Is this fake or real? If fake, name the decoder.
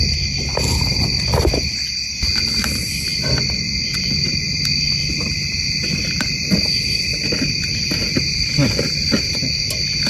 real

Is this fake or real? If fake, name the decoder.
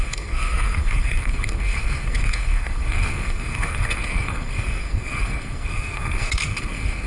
fake, codec, SNAC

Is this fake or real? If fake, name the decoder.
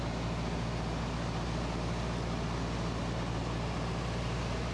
real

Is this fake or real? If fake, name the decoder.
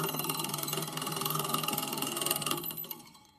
fake, codec, SNAC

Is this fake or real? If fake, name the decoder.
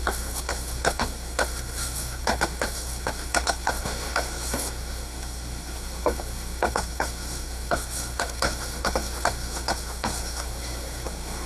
fake, codec, SNAC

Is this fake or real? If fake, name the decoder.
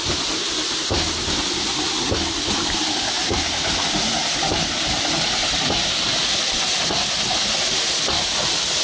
real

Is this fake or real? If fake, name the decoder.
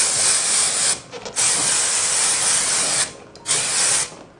real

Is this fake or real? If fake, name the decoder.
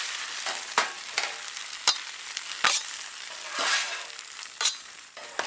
fake, vocoder, BigVGAN v2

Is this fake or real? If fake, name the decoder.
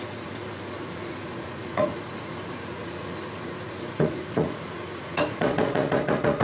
fake, vocoder, Vocos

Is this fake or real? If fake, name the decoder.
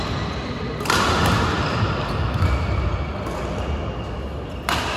real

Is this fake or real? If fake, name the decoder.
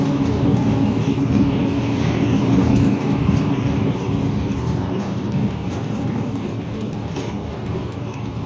fake, codec, DAC